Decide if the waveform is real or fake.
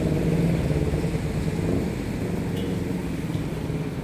real